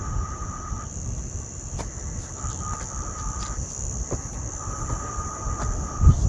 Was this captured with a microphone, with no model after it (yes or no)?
yes